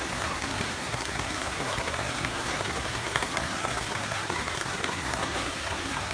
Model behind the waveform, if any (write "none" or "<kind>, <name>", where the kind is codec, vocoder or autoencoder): codec, SNAC